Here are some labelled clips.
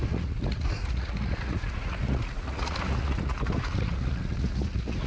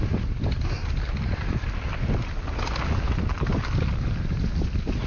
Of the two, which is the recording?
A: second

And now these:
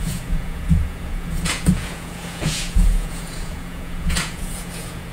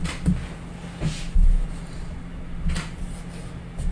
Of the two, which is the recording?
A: second